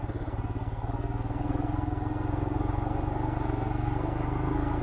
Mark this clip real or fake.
fake